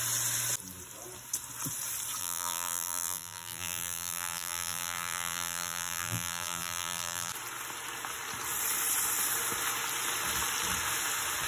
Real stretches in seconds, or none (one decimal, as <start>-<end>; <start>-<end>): 0.0-2.2; 7.3-11.5